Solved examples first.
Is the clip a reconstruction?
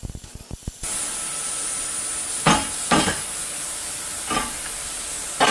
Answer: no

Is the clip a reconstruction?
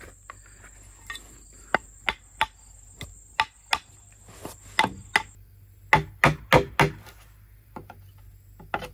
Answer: no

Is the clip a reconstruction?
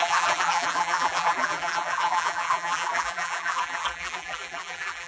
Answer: yes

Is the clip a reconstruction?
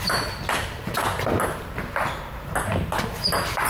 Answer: no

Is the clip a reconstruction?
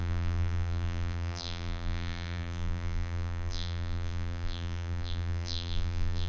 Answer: yes